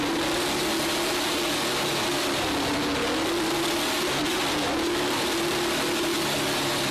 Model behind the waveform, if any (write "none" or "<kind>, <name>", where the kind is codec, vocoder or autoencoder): none